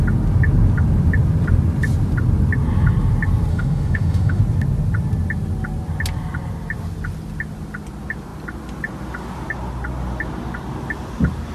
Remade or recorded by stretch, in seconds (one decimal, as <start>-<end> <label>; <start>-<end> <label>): 0.0-3.5 recorded; 3.5-4.4 remade; 4.4-11.5 recorded